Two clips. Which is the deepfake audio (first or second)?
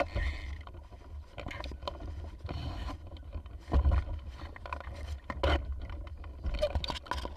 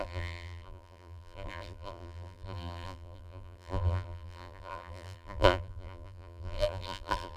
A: second